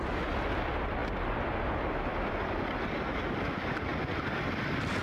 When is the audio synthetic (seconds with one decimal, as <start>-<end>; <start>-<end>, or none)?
none